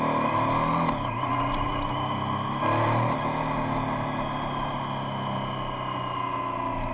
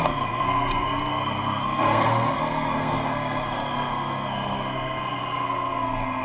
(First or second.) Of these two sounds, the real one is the first